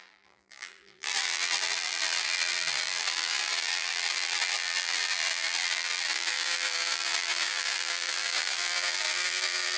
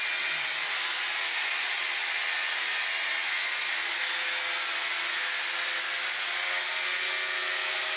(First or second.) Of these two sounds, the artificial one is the first